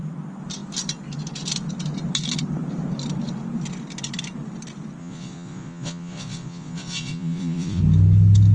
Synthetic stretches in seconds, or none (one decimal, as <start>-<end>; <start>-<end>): 5.0-7.8

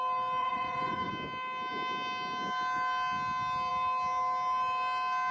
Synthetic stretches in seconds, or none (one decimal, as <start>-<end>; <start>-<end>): 0.4-1.1

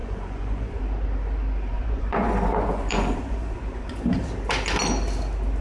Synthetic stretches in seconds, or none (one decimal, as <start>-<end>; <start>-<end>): 0.0-0.8; 1.7-4.2